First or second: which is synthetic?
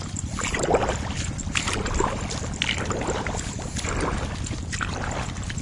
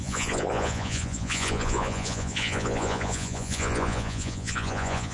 second